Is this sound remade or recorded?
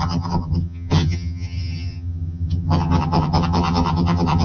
remade